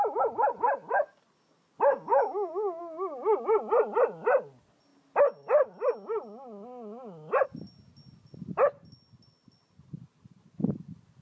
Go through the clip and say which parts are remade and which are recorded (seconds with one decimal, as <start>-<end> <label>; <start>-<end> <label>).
0.0-11.2 recorded